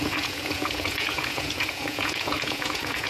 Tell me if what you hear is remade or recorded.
remade